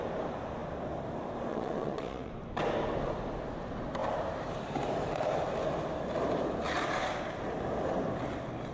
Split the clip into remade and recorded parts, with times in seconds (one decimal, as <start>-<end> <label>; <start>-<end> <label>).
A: 0.0-1.5 recorded; 1.5-2.3 remade; 2.3-8.7 recorded